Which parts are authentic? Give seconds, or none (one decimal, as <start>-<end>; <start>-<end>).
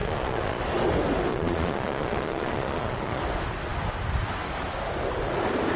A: 0.6-1.3; 3.2-5.8